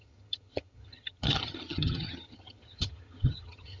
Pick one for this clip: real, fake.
fake